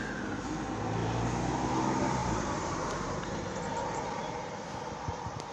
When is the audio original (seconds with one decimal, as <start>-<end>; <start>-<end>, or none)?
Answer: 0.0-2.2; 4.5-5.5